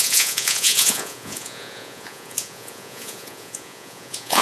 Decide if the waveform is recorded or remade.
remade